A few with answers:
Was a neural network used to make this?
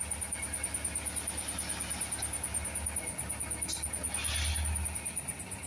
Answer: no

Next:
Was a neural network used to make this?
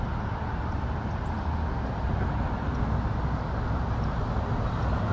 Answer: no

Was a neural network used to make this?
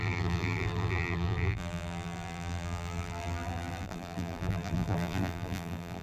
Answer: yes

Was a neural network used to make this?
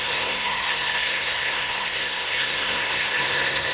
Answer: yes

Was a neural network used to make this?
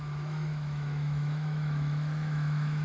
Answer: yes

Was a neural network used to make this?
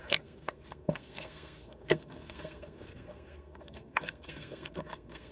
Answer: yes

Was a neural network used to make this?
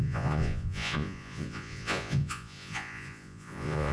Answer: yes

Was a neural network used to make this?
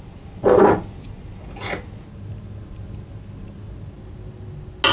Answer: no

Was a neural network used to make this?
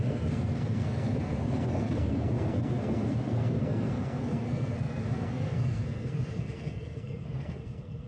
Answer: yes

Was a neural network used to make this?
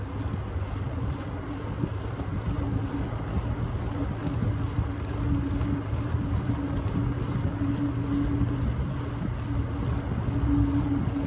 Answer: no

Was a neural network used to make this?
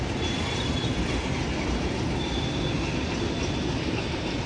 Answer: no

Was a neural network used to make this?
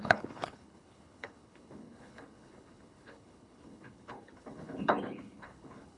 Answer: yes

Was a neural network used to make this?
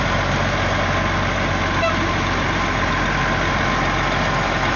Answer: no